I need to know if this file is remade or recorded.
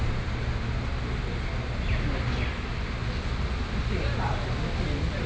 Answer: recorded